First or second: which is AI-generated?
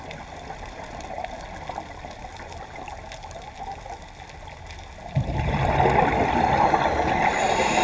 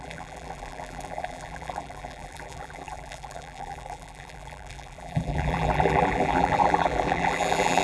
second